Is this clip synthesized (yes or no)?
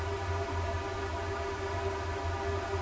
no